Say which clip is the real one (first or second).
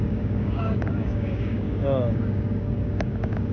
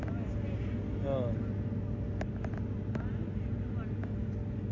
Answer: second